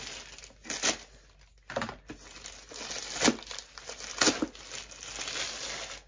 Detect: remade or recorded recorded